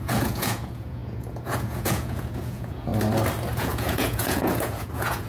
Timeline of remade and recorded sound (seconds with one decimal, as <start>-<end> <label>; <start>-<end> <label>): 0.0-2.9 remade; 2.9-3.6 recorded; 3.6-5.3 remade